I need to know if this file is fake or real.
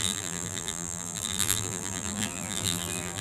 fake